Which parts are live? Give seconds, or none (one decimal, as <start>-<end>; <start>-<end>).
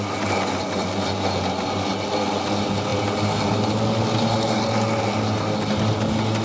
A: 0.0-6.4